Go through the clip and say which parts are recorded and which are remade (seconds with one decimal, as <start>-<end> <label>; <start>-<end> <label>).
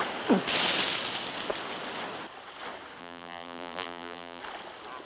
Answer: 0.0-3.0 recorded; 3.0-4.4 remade; 4.4-5.1 recorded